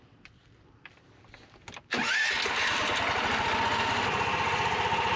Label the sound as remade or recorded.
recorded